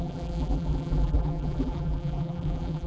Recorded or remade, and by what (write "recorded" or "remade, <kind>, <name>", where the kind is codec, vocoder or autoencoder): remade, vocoder, BigVGAN v2